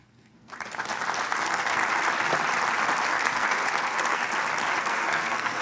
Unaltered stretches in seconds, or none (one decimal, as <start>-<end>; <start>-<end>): 0.5-1.4; 1.8-3.1; 4.2-4.8